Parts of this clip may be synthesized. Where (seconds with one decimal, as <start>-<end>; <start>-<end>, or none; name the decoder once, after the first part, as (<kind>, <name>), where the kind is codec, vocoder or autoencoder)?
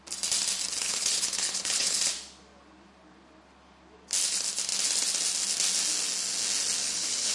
0.8-2.0 (codec, HILCodec); 6.8-7.3